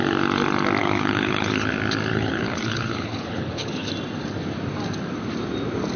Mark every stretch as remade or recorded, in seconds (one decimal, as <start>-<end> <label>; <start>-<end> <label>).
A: 0.0-0.8 recorded; 0.8-1.7 remade; 1.7-2.1 recorded; 2.1-3.9 remade; 3.9-6.0 recorded